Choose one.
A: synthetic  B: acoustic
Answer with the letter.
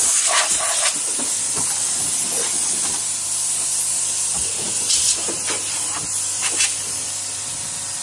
B